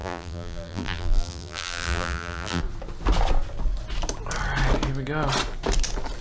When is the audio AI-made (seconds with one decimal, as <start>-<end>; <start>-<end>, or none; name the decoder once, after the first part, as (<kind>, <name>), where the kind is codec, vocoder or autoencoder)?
0.0-2.6 (vocoder, BigVGAN v2)